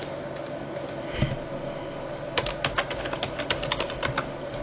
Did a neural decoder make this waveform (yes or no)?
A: no